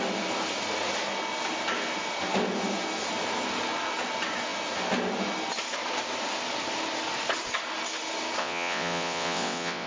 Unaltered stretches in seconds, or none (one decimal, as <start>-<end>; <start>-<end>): 0.0-8.4